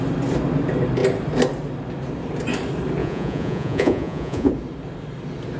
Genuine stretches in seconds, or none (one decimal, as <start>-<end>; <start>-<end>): 0.0-3.0; 4.5-5.6